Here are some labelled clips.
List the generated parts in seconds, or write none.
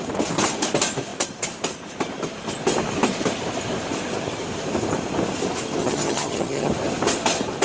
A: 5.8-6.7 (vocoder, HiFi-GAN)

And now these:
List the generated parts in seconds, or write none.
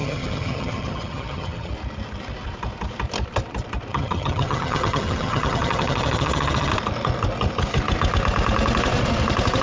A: 0.0-1.7 (vocoder, HiFi-GAN); 3.9-6.7